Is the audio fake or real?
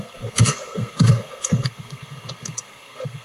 fake